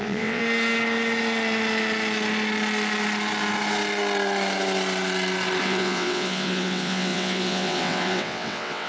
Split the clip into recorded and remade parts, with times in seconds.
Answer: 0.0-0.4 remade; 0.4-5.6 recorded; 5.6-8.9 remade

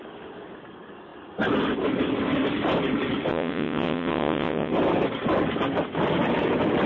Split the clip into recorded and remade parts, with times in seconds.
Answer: 0.0-3.3 recorded; 3.3-4.7 remade; 4.7-6.9 recorded

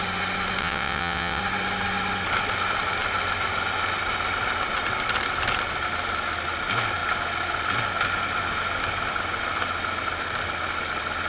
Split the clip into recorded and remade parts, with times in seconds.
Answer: 0.0-0.6 recorded; 0.6-1.4 remade; 1.4-11.3 recorded

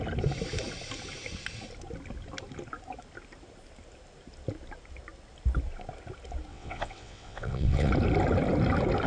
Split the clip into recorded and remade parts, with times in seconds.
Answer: 0.0-6.5 recorded; 6.5-7.9 remade; 7.9-9.1 recorded